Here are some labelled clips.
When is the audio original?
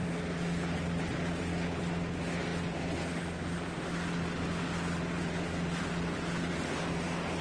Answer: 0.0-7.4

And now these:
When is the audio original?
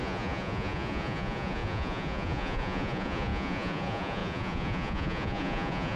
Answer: none